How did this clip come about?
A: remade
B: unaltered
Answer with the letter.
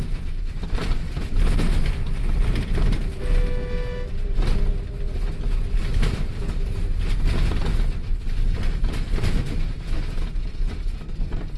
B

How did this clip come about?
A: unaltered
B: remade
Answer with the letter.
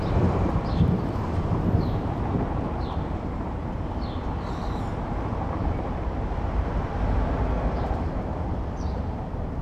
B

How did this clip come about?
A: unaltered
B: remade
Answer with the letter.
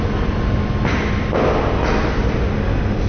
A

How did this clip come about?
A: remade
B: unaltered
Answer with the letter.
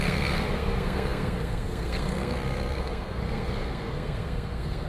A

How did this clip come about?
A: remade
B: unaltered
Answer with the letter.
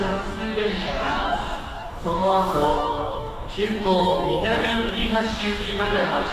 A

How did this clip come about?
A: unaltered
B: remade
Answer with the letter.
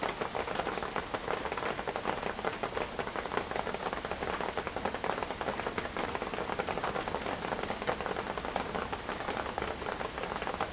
A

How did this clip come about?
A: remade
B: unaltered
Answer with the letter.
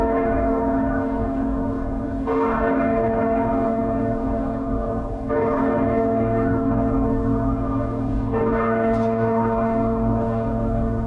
A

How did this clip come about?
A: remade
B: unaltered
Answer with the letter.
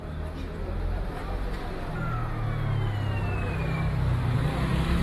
B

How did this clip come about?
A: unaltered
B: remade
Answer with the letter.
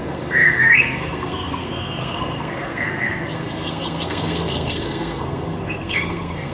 B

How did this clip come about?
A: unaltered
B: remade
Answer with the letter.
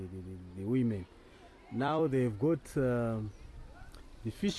B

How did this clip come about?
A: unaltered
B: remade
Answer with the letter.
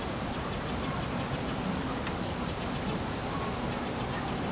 A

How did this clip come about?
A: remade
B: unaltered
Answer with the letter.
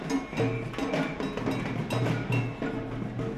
B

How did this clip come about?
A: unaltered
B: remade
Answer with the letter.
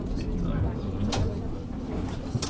A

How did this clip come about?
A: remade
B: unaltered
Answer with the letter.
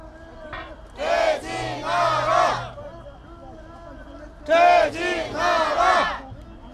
B